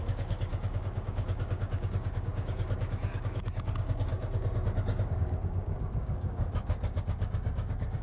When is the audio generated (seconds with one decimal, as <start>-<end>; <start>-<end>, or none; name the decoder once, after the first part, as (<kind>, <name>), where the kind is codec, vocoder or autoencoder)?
0.0-8.0 (codec, DAC)